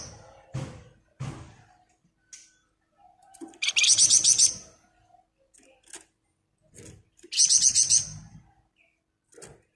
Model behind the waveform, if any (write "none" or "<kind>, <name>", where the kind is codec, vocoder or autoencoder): none